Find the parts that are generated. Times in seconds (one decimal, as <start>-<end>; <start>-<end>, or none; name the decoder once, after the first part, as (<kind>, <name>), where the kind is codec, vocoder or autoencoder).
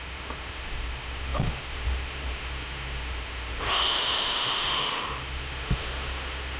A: 0.0-6.6 (autoencoder, DAC-VAE)